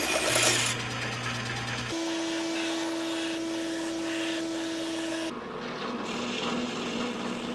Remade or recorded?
recorded